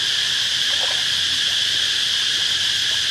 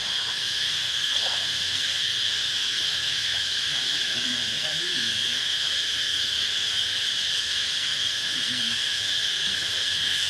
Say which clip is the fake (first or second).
second